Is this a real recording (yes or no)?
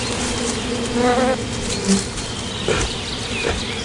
yes